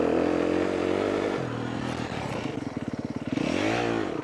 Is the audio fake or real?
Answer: real